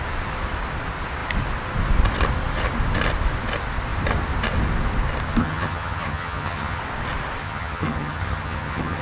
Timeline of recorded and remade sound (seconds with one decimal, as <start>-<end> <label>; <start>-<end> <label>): 0.0-5.4 recorded; 5.4-6.8 remade; 6.8-7.4 recorded; 7.4-9.0 remade